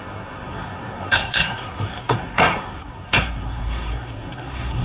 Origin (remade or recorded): remade